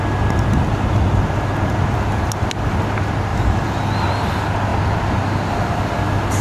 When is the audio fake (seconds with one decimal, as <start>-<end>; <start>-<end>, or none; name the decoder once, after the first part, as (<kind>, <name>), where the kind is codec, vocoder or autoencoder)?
none